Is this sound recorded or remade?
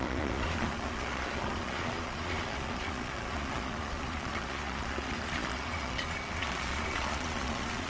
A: remade